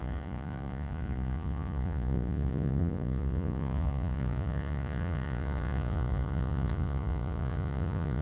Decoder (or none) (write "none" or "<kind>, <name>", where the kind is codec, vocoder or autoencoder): vocoder, Vocos